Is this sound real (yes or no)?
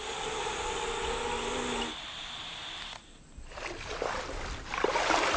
yes